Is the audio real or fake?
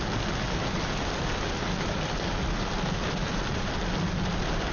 real